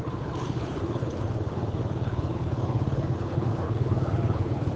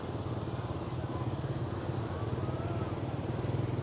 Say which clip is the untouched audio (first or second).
second